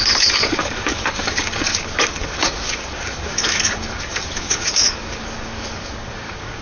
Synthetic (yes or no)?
yes